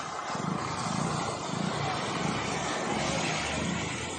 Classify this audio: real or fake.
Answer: real